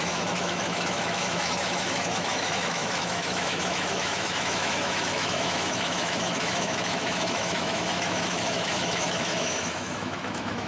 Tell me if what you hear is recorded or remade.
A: remade